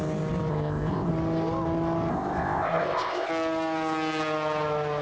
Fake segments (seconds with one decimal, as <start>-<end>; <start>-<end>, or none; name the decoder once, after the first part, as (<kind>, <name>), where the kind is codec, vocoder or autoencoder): 0.5-1.1 (codec, ZipCodec); 2.1-3.3